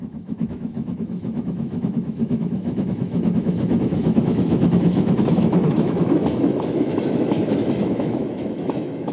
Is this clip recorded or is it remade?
remade